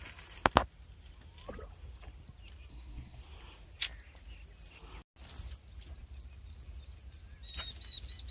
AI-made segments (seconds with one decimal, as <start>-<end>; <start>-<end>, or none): 2.7-3.2